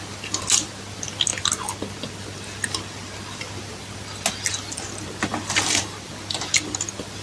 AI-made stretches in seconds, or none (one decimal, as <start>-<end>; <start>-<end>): none